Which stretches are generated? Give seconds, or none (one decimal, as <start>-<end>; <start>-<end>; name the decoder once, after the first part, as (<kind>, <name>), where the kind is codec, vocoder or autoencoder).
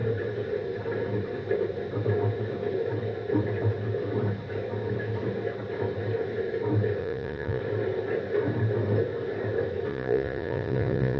7.0-7.6 (vocoder, Vocos); 9.9-11.2